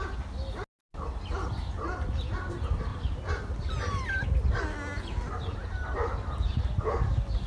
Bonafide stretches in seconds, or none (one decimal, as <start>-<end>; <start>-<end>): 0.0-2.9; 3.7-5.6; 6.1-7.5